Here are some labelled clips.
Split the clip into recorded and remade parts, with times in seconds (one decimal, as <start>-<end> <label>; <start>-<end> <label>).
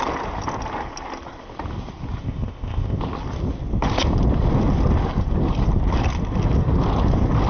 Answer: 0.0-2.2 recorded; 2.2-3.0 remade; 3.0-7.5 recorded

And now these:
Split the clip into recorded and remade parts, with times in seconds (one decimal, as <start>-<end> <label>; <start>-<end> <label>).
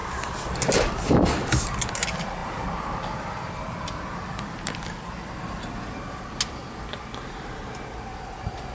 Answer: 0.0-8.7 recorded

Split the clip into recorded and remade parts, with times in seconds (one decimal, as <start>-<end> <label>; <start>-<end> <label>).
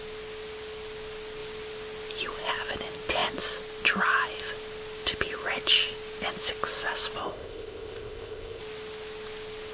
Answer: 0.0-7.2 recorded; 7.2-8.6 remade; 8.6-9.7 recorded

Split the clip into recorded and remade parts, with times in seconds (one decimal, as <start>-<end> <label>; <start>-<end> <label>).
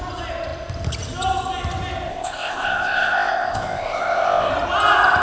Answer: 0.0-2.1 recorded; 2.1-4.5 remade; 4.5-5.2 recorded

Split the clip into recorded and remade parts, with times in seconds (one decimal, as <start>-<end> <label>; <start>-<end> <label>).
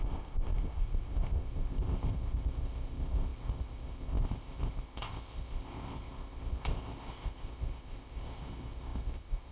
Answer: 0.0-9.5 remade